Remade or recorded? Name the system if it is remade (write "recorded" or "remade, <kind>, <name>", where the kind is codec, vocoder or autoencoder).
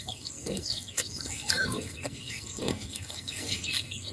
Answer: remade, codec, SNAC